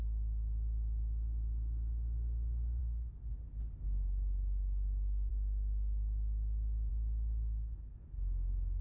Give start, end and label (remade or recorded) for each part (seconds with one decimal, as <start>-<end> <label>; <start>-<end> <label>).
0.0-8.8 recorded